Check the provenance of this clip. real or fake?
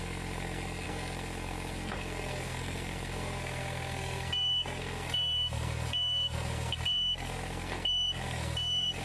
fake